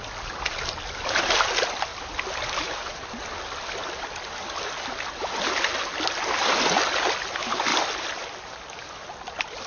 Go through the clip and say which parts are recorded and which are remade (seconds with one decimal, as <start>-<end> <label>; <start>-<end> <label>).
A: 0.0-9.7 recorded